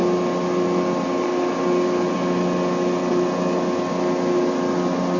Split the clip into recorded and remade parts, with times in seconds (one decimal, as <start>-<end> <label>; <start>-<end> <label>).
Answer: 0.0-5.2 recorded